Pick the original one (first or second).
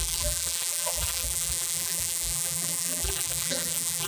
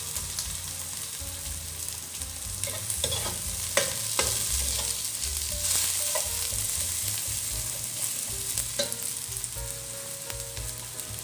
second